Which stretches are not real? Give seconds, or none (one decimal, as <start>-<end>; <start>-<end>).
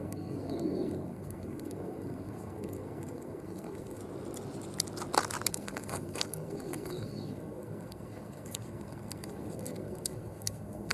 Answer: 0.0-4.0; 5.5-10.9